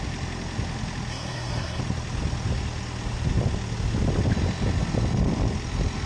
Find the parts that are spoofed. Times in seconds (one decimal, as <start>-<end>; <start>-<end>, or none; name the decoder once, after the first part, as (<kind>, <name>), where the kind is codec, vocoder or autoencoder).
1.1-1.8 (codec, SNAC)